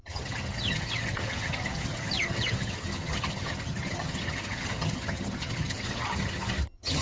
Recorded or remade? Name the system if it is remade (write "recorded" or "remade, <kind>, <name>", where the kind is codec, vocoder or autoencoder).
remade, vocoder, HiFi-GAN